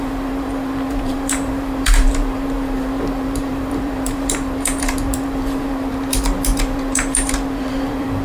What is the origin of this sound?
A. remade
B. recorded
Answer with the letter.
A